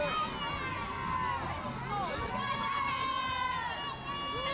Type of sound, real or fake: real